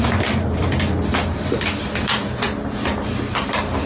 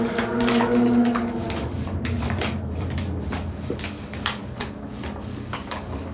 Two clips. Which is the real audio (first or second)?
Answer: first